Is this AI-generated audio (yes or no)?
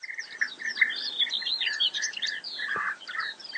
no